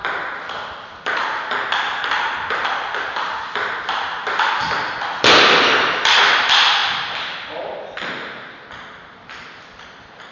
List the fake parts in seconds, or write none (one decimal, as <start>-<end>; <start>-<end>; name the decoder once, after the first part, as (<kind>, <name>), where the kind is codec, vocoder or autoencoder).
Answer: none